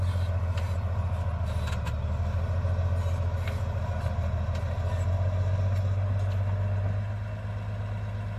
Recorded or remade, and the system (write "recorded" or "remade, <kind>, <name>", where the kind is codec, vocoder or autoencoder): recorded